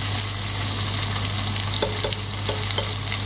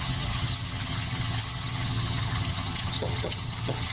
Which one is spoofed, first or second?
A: second